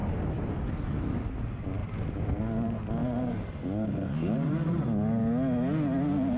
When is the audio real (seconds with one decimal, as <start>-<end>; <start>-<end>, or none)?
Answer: 0.0-1.8; 2.4-3.0; 4.8-6.4